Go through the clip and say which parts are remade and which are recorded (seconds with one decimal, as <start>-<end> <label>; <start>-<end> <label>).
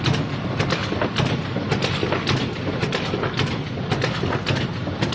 0.0-5.1 recorded